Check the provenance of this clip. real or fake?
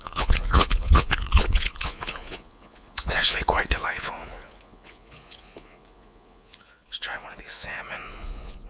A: fake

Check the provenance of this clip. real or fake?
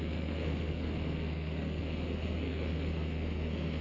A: fake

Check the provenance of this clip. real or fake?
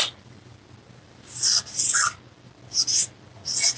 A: real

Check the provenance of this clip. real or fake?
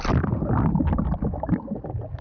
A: real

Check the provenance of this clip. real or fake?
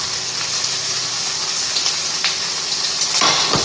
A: fake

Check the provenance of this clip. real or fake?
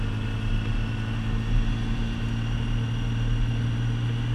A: real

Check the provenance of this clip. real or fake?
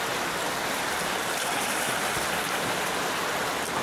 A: real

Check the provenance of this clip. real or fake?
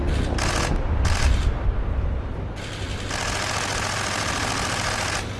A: real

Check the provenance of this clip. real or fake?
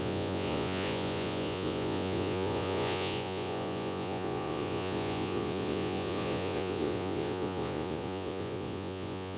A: fake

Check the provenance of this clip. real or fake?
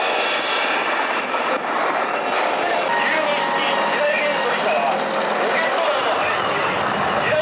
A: real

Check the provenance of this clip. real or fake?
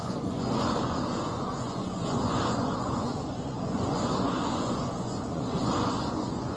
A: fake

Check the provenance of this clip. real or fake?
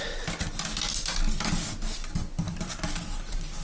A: real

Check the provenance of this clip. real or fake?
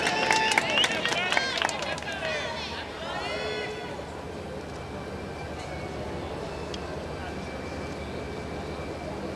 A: real